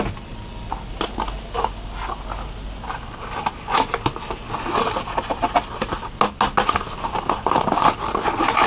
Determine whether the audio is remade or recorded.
recorded